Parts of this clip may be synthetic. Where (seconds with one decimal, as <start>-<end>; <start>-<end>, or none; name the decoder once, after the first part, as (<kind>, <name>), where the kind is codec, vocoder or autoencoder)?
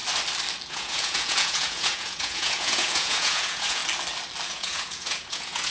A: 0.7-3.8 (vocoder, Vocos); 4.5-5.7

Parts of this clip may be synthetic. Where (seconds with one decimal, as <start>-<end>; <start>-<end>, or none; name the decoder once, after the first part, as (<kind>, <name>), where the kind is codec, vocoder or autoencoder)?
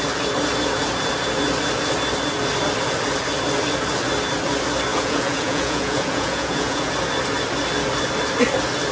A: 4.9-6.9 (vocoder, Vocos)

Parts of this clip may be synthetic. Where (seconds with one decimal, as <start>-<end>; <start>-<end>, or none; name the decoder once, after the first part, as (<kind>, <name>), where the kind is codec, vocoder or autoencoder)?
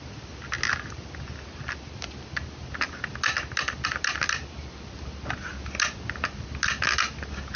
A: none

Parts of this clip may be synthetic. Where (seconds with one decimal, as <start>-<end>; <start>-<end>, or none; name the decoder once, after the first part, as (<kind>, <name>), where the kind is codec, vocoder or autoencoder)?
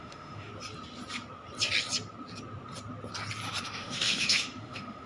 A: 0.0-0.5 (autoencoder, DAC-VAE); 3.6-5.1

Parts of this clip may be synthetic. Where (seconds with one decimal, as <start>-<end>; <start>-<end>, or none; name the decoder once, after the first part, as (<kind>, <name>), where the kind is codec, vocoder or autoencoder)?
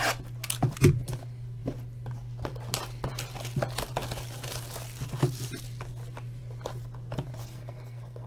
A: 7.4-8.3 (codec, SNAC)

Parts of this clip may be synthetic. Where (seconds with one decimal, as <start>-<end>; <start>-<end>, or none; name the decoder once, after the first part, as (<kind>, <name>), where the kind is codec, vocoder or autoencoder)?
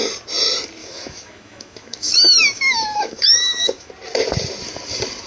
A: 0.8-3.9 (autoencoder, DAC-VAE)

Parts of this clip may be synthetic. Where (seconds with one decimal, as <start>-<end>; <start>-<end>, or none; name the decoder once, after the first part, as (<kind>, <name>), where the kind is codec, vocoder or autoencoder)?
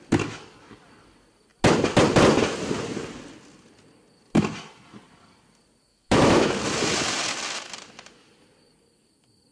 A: 5.9-6.5 (autoencoder, DAC-VAE)